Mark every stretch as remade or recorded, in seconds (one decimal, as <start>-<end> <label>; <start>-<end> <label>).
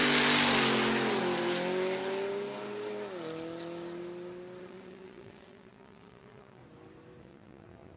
0.0-4.6 recorded; 4.6-6.6 remade; 6.6-7.2 recorded; 7.2-8.0 remade